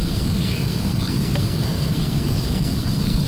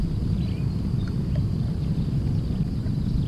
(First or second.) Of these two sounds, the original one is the second